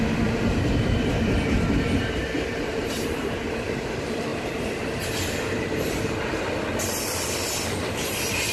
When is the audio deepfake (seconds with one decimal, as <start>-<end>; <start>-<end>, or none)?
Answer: 0.0-4.3; 7.9-8.5

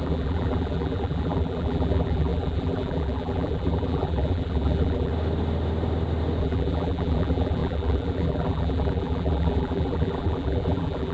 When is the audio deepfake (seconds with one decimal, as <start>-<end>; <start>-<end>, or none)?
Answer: 0.0-5.1; 6.4-11.1

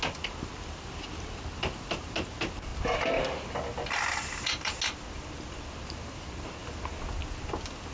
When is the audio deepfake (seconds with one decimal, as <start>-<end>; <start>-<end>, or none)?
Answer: none

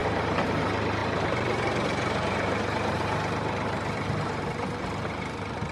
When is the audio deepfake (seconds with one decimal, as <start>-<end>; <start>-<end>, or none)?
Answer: 0.0-0.5; 1.0-4.4

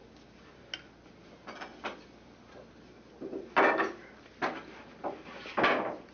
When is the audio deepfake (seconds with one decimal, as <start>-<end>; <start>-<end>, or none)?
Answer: none

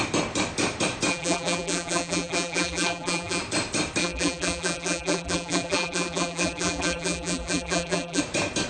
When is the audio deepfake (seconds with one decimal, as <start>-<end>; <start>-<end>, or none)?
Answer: 1.1-3.4; 4.0-8.2